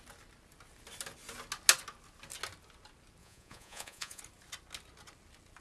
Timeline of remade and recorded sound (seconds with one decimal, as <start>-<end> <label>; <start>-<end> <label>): 0.0-3.2 recorded; 3.2-4.2 remade; 4.2-5.6 recorded